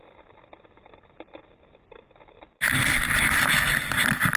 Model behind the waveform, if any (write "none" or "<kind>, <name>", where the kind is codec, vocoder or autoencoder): none